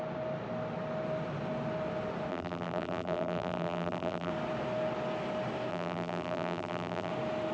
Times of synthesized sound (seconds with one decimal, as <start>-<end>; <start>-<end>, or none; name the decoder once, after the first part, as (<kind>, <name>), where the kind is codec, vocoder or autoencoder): 2.3-4.3 (vocoder, BigVGAN v2); 5.7-7.1